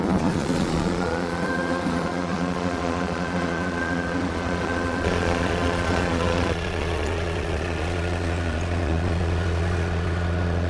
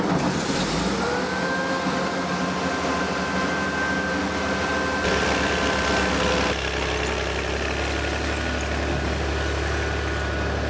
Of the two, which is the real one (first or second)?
second